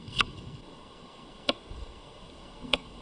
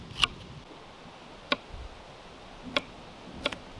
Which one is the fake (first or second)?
first